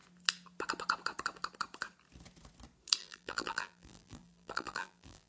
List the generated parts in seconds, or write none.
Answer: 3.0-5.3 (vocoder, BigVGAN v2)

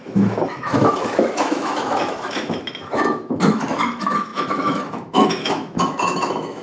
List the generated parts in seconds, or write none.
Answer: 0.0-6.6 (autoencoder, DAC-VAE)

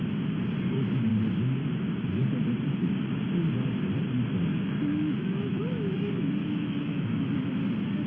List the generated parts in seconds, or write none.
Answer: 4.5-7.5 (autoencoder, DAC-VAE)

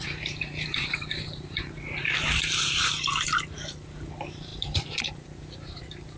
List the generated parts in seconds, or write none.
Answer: 0.0-6.2 (vocoder, BigVGAN v2)

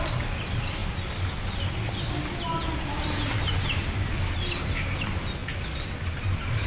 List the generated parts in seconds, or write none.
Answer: none

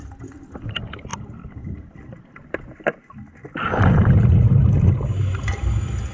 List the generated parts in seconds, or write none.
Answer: 1.1-4.8 (vocoder, BigVGAN v2)